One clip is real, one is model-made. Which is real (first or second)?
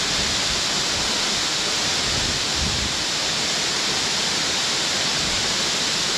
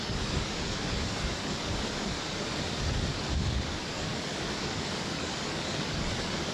first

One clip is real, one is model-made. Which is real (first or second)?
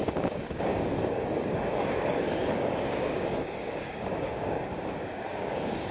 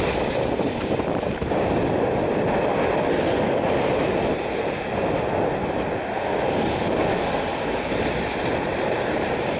second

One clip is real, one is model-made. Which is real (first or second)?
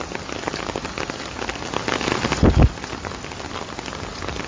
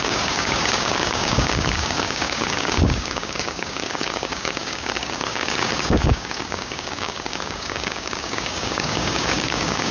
first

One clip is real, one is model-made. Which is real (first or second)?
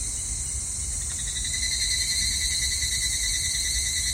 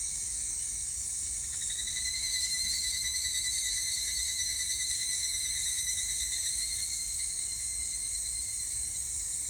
first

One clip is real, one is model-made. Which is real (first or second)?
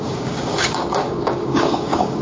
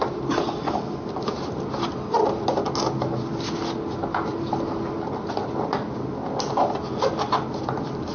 second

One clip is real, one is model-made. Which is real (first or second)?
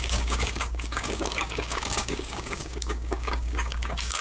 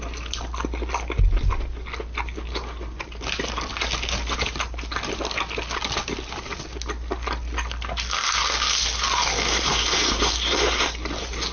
second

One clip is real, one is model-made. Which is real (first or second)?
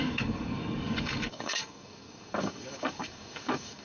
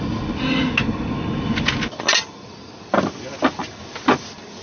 second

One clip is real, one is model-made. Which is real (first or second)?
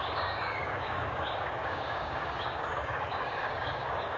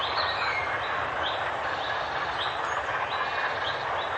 second